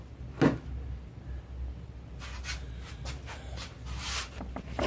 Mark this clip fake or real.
real